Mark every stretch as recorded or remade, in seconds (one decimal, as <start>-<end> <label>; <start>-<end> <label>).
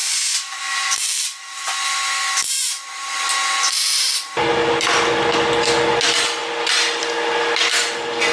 0.0-8.3 recorded